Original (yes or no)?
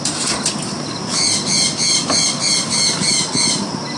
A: yes